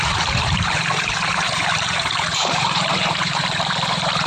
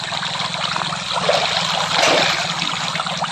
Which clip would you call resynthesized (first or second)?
first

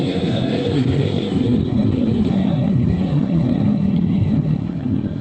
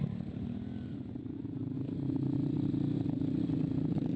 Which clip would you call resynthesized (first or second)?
first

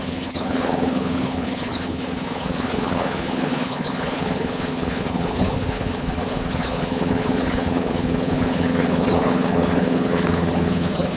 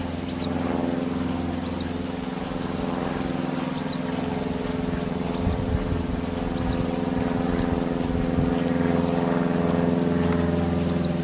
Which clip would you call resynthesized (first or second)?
first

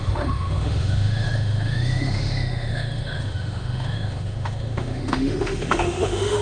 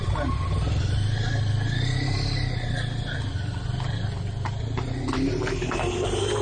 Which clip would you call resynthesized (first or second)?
first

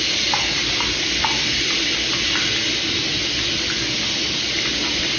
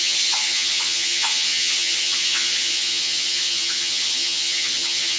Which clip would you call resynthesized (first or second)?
second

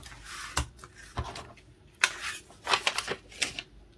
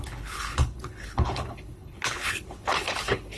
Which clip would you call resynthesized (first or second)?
second